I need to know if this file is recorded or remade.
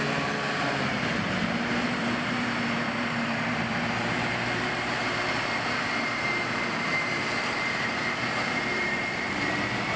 remade